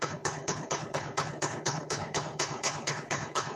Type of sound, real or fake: fake